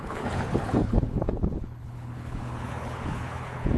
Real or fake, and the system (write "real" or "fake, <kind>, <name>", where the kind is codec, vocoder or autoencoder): fake, codec, HILCodec